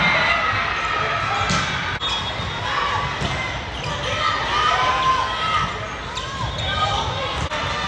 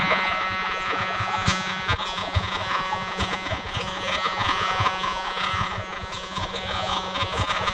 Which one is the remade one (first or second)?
second